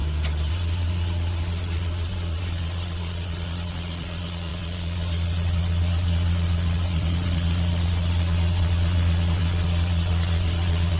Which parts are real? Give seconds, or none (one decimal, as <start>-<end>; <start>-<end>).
0.0-0.5